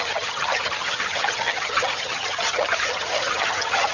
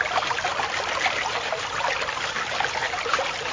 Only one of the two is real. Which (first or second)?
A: second